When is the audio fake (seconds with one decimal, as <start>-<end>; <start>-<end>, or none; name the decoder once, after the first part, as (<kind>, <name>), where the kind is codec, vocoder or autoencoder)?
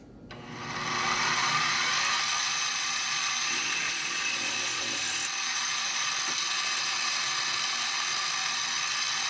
1.4-1.9 (vocoder, Vocos); 2.4-5.0; 5.4-6.1